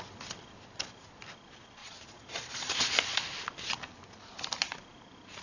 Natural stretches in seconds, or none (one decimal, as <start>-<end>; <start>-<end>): 0.0-1.8; 3.2-5.4